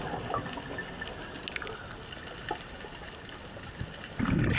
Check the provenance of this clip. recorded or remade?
recorded